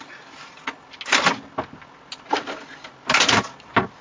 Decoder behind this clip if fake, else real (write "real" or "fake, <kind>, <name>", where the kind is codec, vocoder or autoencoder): real